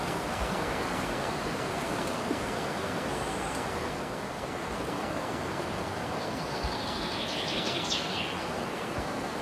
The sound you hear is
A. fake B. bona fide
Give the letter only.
A